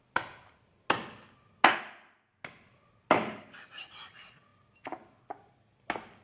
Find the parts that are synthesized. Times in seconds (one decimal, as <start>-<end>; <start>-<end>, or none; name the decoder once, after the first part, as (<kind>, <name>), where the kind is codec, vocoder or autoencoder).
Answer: none